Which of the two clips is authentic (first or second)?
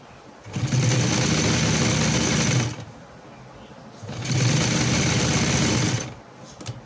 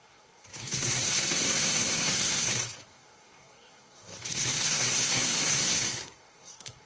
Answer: first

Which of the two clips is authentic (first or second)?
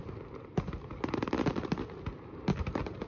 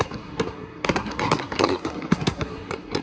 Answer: first